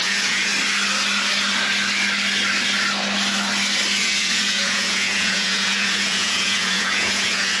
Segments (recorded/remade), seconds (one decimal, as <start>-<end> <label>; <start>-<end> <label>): 0.0-0.5 remade; 0.5-4.0 recorded; 4.0-7.6 remade